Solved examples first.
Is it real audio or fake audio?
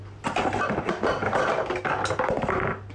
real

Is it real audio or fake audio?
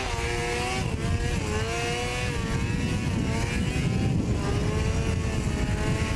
real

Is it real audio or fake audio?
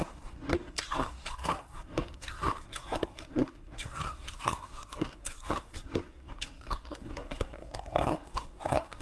fake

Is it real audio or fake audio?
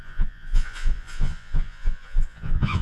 fake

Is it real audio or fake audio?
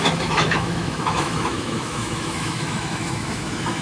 fake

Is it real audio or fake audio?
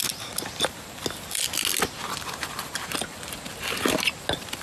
real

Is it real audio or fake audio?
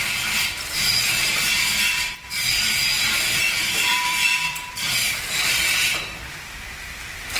fake